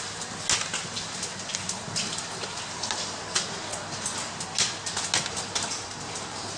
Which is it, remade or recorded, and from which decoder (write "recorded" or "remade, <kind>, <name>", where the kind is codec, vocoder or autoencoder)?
recorded